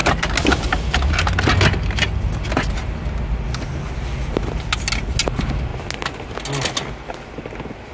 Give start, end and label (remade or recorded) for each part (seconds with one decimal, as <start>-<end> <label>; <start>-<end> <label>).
0.0-7.9 recorded